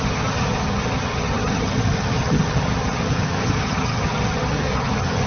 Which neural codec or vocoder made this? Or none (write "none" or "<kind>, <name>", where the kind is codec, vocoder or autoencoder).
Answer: vocoder, HiFi-GAN